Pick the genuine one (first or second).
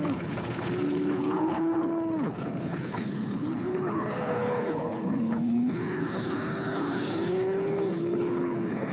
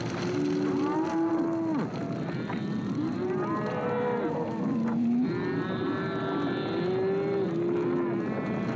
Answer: second